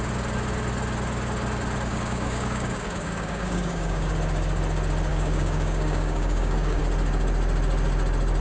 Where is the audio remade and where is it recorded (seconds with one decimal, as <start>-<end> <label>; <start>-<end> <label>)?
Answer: 0.0-1.9 recorded; 1.9-4.1 remade; 4.1-5.1 recorded; 5.1-6.8 remade; 6.8-8.4 recorded